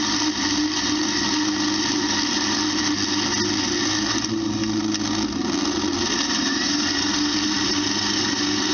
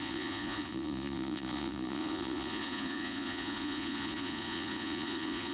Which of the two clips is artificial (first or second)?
second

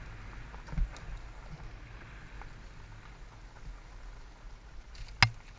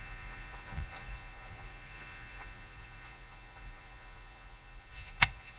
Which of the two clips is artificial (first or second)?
second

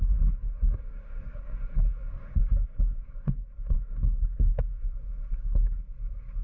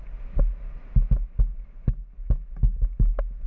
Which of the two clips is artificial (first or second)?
first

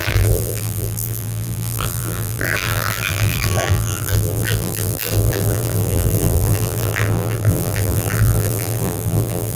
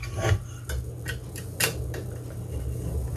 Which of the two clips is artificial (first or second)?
first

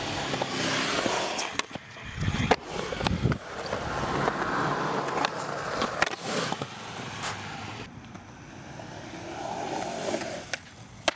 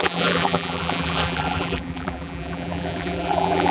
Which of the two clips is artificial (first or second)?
second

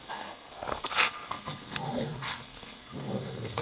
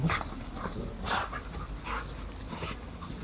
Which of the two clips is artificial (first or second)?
first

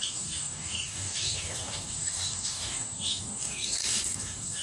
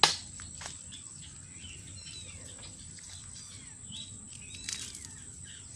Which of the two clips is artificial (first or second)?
first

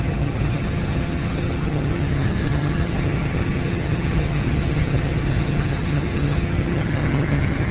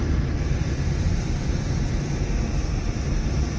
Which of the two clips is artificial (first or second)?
first